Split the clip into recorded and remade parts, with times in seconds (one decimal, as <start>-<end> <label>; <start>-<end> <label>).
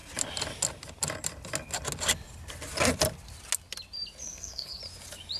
0.0-4.2 recorded; 4.2-4.8 remade; 4.8-5.4 recorded